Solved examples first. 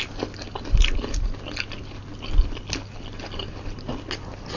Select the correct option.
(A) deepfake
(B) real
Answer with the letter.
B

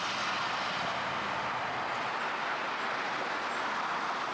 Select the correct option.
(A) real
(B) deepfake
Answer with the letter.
A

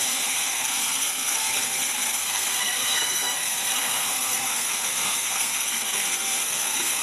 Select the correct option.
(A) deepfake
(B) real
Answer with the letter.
A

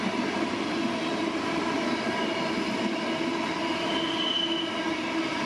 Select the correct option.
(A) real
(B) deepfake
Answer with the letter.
A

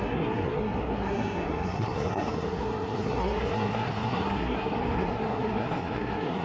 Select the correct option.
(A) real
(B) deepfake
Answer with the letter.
B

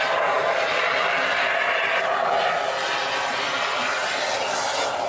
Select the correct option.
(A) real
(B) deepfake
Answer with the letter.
A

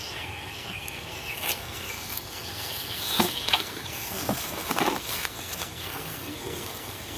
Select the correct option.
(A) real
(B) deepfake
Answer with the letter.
B